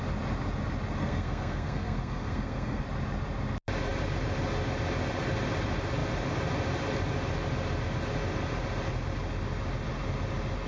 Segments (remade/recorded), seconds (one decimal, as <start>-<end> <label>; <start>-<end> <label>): 0.0-1.0 recorded; 1.0-2.8 remade; 2.8-10.7 recorded